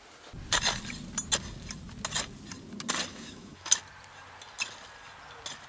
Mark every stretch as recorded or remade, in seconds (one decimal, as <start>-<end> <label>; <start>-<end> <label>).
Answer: 0.0-3.1 recorded; 3.1-3.7 remade; 3.7-5.7 recorded